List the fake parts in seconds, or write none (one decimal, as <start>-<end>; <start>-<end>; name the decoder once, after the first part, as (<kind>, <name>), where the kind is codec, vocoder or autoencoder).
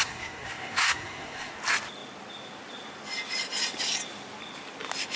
0.0-1.5 (codec, SNAC)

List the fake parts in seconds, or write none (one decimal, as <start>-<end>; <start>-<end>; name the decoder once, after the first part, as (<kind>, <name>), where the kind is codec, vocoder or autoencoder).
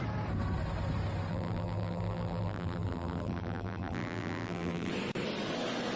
1.3-4.9 (vocoder, BigVGAN v2)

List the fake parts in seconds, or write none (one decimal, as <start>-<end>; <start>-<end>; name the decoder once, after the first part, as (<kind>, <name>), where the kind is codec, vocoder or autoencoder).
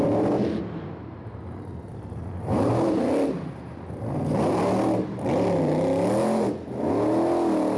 1.9-2.7 (vocoder, BigVGAN v2)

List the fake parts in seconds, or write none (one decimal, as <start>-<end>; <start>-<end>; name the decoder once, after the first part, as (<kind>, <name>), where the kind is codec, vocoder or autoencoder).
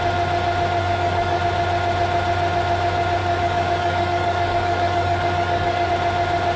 0.8-1.4 (codec, DAC); 3.2-5.9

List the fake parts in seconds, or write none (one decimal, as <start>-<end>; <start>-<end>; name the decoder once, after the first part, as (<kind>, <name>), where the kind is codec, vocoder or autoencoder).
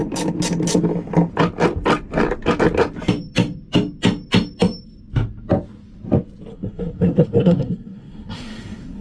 6.5-9.0 (codec, SNAC)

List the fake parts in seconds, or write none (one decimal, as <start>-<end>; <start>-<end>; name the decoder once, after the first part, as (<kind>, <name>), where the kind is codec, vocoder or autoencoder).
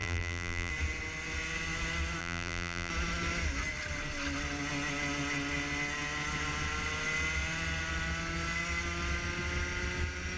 0.0-0.7 (vocoder, BigVGAN v2); 2.2-2.9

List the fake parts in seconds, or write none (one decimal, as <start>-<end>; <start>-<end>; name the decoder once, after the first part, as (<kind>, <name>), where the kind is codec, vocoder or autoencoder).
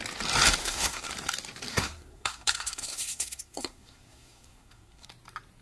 0.6-1.1 (codec, SNAC); 1.7-5.1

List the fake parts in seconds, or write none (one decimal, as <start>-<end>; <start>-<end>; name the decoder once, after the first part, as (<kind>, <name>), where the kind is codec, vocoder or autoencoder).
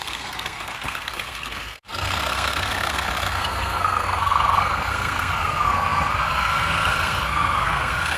0.0-8.2 (codec, SNAC)